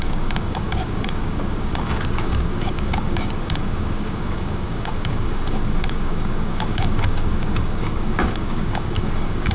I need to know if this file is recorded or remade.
remade